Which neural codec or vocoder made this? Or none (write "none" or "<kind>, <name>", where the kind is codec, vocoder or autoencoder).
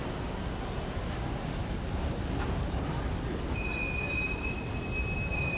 none